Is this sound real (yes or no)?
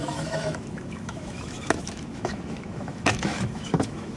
no